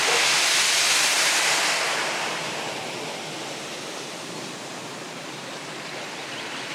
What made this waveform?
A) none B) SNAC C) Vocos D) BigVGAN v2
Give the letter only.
A